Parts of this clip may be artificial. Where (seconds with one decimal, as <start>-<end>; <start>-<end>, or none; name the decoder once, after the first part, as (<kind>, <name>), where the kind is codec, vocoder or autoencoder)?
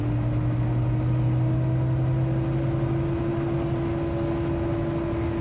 none